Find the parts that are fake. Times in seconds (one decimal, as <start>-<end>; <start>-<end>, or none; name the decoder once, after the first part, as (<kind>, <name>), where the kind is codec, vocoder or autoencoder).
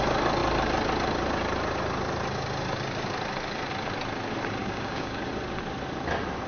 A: 4.6-5.3 (codec, DAC)